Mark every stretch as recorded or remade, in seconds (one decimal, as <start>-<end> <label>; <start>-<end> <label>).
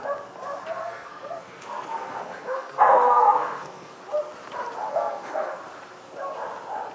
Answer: 0.0-0.8 recorded; 0.8-4.0 remade; 4.0-4.9 recorded; 4.9-5.6 remade; 5.6-6.9 recorded